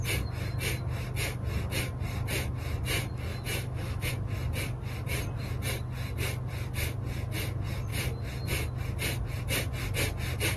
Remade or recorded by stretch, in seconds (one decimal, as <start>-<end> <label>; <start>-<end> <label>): 0.0-3.3 recorded; 3.3-4.1 remade; 4.1-10.6 recorded